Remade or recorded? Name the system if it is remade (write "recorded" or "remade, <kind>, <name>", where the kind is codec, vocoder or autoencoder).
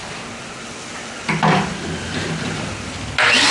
recorded